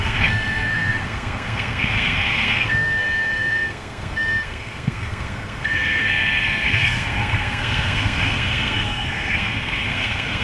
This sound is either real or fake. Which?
fake